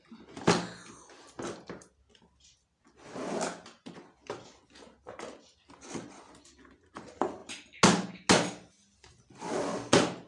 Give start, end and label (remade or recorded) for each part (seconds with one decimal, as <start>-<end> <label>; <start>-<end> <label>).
0.0-10.3 recorded